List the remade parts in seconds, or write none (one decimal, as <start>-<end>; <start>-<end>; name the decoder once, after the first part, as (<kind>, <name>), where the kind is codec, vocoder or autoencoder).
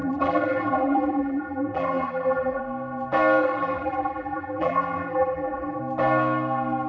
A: 0.0-2.6 (vocoder, BigVGAN v2); 3.4-5.8